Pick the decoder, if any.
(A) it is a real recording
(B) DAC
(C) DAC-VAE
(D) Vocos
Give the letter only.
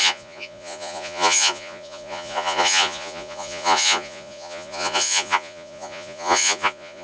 D